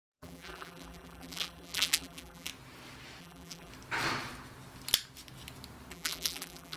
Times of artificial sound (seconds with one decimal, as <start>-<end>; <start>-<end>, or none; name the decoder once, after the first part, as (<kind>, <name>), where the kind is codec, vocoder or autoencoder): 0.0-2.5 (vocoder, BigVGAN v2); 3.2-3.7; 5.9-6.8